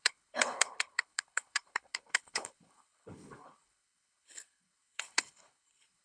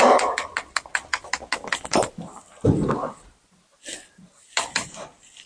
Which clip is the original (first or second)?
second